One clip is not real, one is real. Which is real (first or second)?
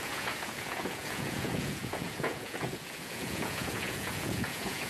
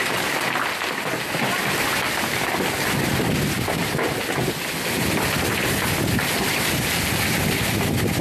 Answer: second